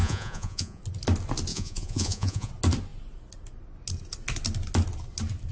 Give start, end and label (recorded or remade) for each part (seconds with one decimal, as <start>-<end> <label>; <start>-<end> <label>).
0.0-0.8 remade; 0.8-1.5 recorded; 1.5-2.5 remade; 2.5-5.5 recorded